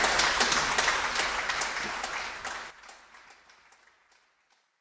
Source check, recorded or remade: recorded